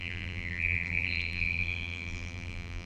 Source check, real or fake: fake